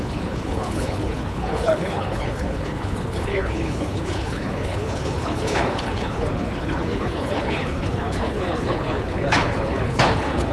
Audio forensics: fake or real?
fake